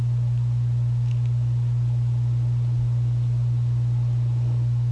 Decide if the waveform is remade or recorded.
recorded